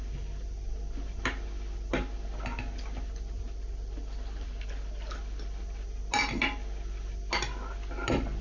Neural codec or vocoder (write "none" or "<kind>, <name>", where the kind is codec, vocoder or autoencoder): none